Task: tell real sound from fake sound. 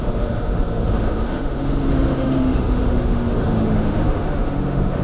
fake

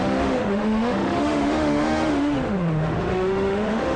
fake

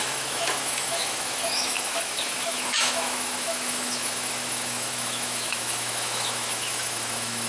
fake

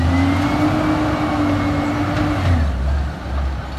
real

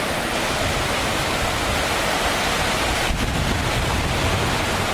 real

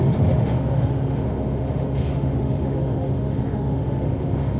fake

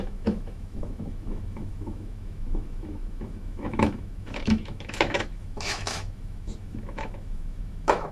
fake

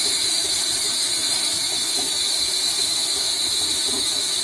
fake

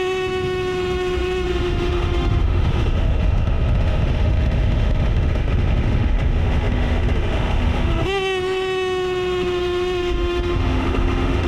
fake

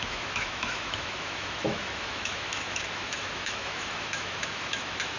fake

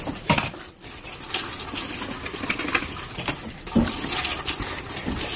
real